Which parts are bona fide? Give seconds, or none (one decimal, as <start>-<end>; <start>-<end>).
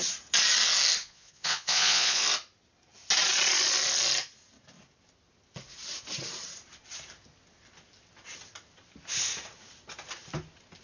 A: 0.0-1.0; 2.2-10.8